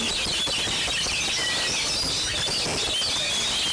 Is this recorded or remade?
recorded